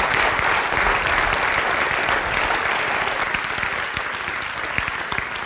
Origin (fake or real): real